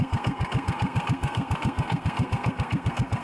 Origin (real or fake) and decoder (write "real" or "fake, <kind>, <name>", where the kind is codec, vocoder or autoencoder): fake, codec, SNAC